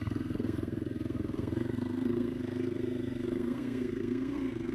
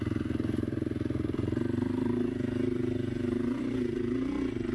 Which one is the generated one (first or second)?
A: first